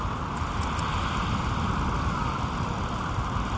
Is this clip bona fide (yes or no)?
yes